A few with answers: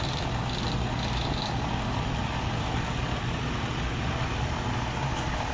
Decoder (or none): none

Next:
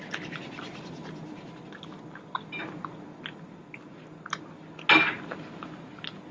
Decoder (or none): none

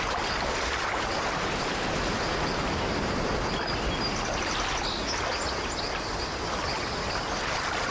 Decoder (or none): none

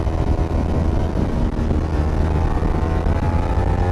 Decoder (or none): none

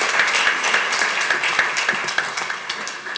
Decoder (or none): none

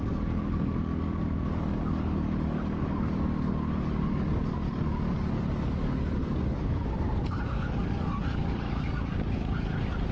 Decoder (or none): codec, DAC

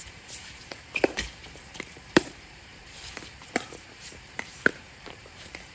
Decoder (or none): vocoder, BigVGAN v2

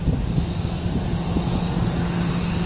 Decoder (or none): none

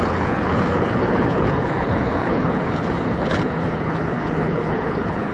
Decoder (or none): codec, HILCodec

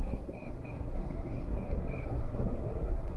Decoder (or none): codec, SNAC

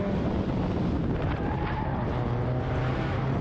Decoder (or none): none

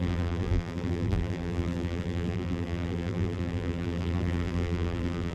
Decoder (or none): vocoder, BigVGAN v2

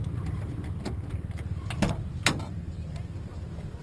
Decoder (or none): none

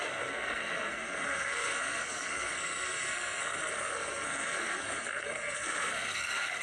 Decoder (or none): codec, SNAC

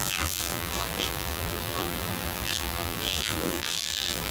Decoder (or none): vocoder, BigVGAN v2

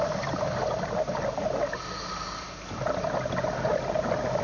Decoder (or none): none